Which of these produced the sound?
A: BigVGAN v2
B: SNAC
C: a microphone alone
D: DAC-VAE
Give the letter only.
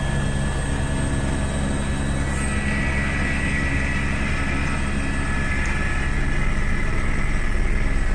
C